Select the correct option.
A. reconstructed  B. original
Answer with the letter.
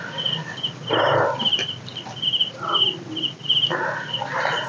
B